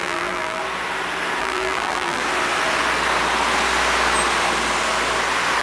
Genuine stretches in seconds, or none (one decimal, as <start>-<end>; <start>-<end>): 0.6-1.4; 2.2-5.6